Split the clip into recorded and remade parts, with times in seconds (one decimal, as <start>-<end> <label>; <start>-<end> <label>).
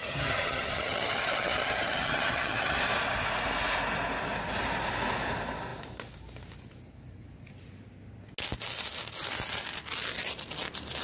0.0-2.8 remade; 2.8-11.0 recorded